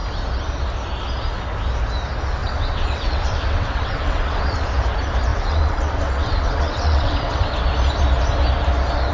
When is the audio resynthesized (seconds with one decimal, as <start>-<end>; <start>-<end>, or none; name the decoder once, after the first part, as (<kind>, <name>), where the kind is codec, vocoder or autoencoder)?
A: 2.4-4.6 (vocoder, WaveNeXt); 5.3-7.5